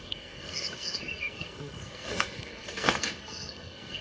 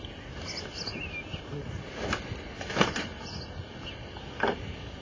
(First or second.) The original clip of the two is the second